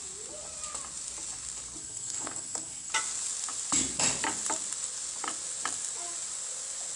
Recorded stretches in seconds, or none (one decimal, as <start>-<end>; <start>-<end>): 0.0-1.8; 2.9-7.0